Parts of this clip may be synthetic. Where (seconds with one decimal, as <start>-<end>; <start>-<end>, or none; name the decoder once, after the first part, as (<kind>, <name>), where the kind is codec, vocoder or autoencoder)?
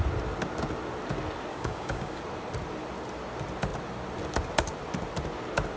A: 1.5-2.2 (codec, DAC)